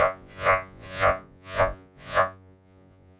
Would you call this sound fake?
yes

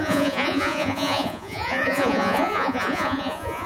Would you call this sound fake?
yes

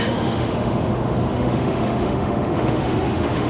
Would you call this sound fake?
yes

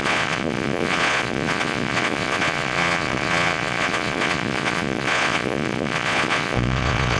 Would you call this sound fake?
yes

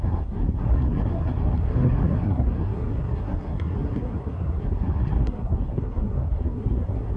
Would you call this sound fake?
yes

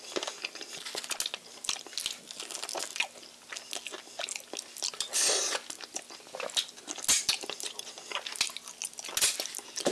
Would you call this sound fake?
no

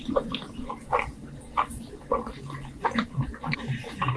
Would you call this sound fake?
no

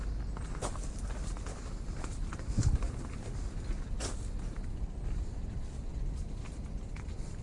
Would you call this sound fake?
no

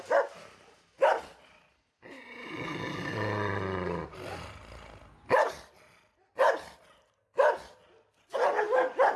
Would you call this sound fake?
no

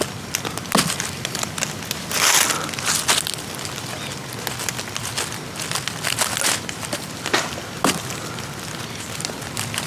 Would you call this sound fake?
no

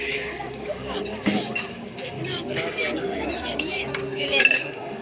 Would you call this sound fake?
yes